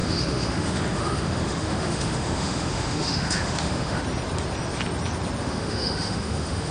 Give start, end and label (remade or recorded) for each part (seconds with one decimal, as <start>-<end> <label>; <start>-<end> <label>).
0.0-4.0 remade; 4.0-5.4 recorded; 5.4-6.7 remade